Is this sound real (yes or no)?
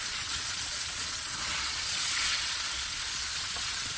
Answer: no